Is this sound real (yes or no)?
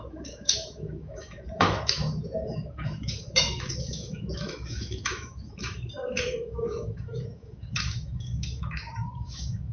no